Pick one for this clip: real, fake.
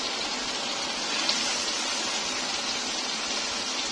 real